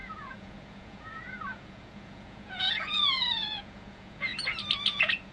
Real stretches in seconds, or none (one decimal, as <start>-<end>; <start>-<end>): 4.3-4.8